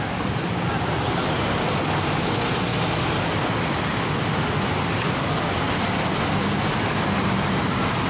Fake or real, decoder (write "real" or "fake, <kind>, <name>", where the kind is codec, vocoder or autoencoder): real